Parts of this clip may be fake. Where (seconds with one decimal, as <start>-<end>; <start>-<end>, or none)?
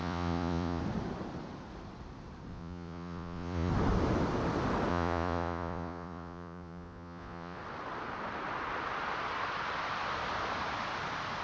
0.0-0.8; 2.5-3.7; 4.9-7.6